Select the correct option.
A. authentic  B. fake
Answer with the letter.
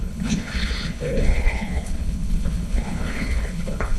B